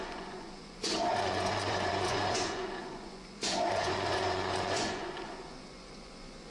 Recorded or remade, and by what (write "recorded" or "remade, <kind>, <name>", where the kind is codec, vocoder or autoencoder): remade, vocoder, Vocos